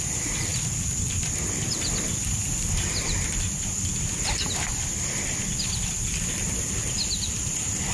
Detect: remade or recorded recorded